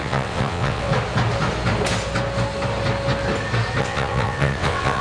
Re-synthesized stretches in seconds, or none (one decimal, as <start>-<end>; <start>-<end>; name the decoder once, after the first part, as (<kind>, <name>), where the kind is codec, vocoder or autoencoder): 0.0-0.9 (vocoder, WaveNeXt); 3.8-5.0